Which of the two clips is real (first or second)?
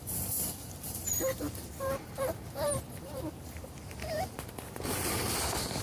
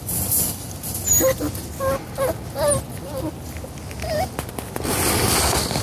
second